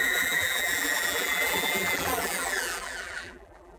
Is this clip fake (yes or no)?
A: yes